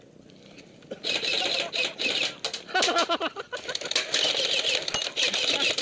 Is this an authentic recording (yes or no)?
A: yes